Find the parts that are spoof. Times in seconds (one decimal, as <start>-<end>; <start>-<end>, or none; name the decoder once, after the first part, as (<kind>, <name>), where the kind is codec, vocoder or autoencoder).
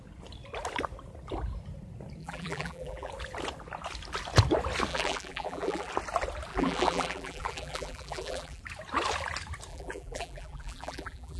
2.2-3.1 (vocoder, BigVGAN v2); 4.9-5.9; 6.5-8.6; 9.7-11.4